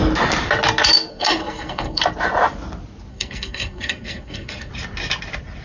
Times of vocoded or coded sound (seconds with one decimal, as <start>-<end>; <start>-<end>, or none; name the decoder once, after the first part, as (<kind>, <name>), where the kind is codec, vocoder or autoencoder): 1.1-2.0 (codec, SNAC); 3.1-4.7